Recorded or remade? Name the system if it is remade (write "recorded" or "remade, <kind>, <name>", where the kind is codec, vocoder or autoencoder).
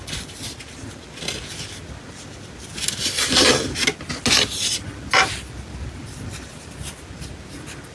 recorded